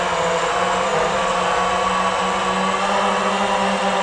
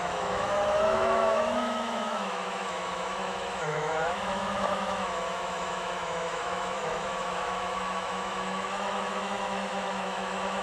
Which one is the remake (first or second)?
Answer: second